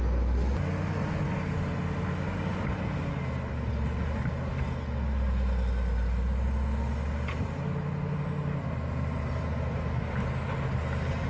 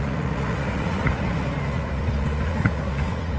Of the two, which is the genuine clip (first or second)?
first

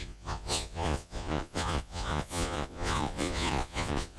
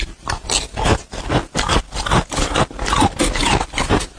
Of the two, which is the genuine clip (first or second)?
second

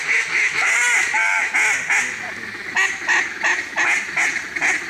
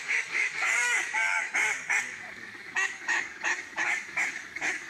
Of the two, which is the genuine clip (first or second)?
first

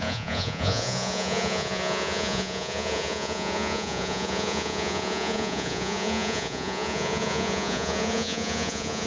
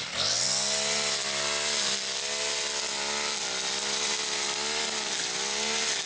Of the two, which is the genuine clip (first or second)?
second